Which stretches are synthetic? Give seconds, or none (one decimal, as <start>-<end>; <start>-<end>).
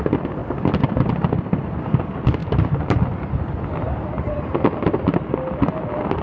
0.4-1.6; 2.4-4.3